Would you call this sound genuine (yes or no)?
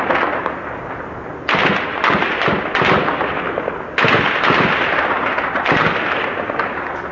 yes